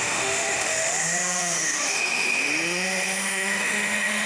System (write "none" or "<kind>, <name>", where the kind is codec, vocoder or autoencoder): autoencoder, DAC-VAE